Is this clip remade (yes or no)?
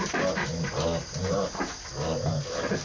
no